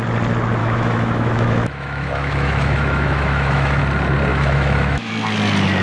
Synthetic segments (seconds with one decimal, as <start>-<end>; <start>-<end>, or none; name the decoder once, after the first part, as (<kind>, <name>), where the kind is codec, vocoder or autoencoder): 0.6-3.8 (autoencoder, DAC-VAE); 4.3-5.1